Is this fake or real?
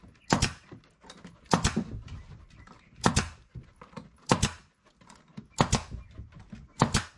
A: real